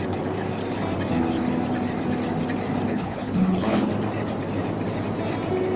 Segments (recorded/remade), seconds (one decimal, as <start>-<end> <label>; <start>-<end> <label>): 0.0-2.9 recorded; 2.9-3.9 remade; 3.9-5.8 recorded